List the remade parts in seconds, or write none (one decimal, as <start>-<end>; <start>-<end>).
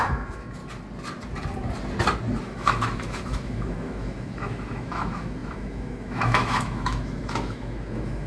0.0-0.6; 2.4-8.3